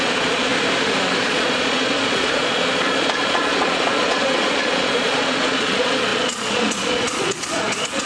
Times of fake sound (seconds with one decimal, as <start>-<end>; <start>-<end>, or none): 0.0-0.5; 1.2-8.1